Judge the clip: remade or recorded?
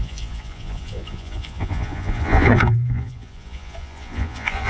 remade